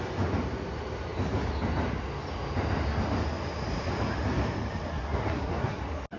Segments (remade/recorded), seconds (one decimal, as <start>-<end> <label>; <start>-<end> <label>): 0.0-4.9 recorded; 4.9-5.8 remade; 5.8-6.2 recorded